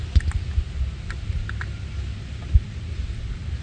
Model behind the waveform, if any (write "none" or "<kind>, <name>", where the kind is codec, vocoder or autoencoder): none